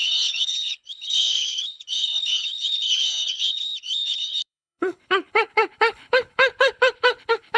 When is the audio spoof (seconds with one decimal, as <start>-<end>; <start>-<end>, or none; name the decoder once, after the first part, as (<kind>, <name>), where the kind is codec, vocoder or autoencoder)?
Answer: 0.0-7.6 (codec, HILCodec)